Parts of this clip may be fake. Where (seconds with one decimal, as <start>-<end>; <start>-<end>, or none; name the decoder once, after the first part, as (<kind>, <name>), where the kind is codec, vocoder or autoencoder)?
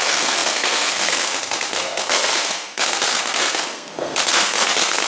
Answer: 0.0-5.1 (codec, SNAC)